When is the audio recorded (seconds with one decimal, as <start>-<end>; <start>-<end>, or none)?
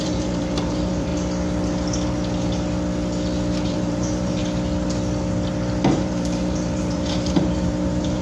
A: 1.1-3.7; 4.4-5.9